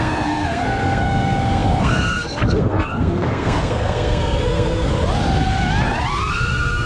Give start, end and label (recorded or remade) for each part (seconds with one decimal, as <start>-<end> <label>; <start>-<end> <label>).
0.0-4.9 remade; 4.9-6.3 recorded; 6.3-6.9 remade